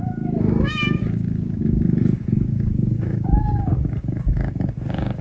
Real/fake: fake